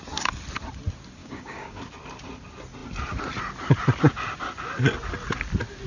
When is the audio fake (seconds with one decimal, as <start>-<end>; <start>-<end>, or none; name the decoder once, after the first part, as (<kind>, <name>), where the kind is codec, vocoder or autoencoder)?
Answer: 1.2-1.8 (codec, DAC)